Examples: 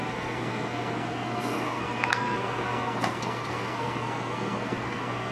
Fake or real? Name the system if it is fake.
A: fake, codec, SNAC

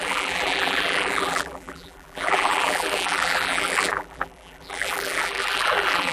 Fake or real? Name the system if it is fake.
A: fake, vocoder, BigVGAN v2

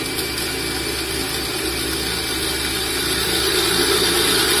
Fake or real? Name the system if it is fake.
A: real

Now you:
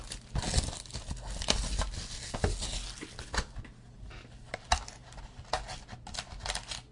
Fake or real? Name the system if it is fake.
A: real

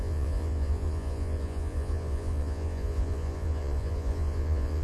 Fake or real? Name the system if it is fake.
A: fake, vocoder, Vocos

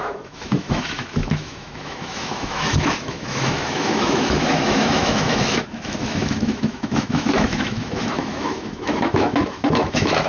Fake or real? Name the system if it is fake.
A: fake, autoencoder, DAC-VAE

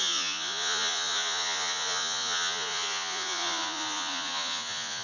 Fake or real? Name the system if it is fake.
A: fake, vocoder, Vocos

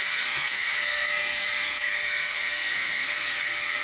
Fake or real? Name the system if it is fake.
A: fake, codec, SNAC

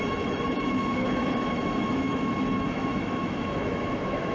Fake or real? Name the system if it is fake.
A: fake, autoencoder, DAC-VAE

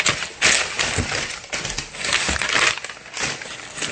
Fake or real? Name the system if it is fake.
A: real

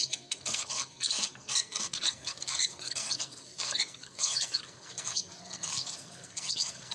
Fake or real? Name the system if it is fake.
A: fake, codec, SNAC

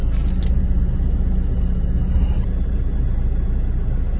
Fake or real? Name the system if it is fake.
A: real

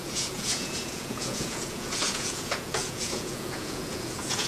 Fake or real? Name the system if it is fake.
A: fake, vocoder, Vocos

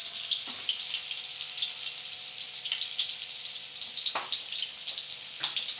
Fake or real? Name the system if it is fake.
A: real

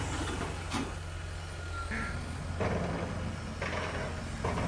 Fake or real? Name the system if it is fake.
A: real